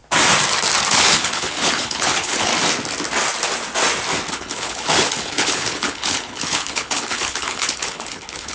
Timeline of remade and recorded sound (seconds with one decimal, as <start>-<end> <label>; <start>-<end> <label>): 0.0-0.9 recorded; 0.9-2.5 remade; 2.5-4.3 recorded; 4.3-8.5 remade